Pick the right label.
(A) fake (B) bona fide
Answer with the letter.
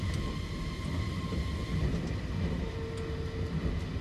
B